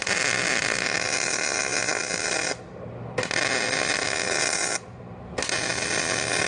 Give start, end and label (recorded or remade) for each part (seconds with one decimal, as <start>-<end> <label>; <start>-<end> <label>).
0.0-6.5 recorded